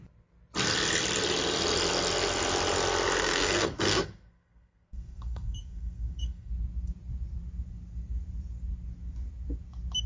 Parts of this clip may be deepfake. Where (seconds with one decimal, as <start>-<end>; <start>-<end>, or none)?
3.2-6.5